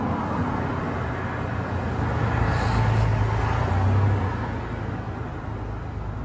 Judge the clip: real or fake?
real